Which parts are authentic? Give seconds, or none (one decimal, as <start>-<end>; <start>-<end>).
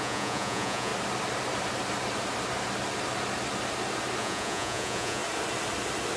0.9-4.2; 5.2-6.2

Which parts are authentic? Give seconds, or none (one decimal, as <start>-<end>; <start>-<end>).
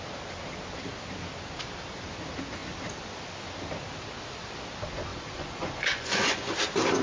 0.0-5.1; 6.5-7.0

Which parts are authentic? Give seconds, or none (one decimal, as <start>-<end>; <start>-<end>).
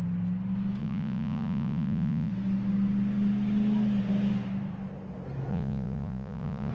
0.0-0.8; 2.3-5.5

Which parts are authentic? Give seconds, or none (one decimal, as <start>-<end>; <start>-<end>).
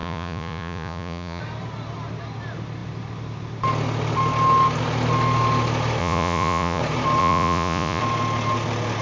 1.4-6.0; 6.8-7.2; 8.0-9.0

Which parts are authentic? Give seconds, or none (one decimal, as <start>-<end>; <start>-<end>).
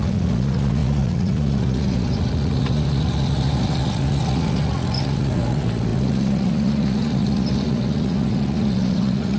none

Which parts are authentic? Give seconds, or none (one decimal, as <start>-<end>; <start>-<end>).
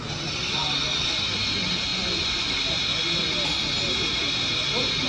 0.0-1.9; 2.6-5.1